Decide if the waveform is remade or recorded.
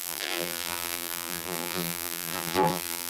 remade